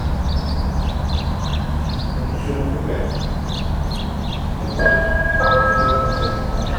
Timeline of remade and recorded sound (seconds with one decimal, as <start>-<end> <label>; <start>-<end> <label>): 0.0-0.9 recorded; 0.9-2.0 remade; 2.0-4.3 recorded; 4.3-6.8 remade